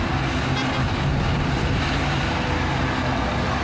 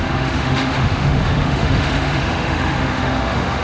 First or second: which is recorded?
first